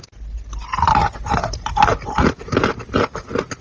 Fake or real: real